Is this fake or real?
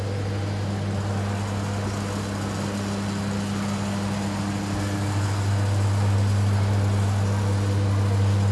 real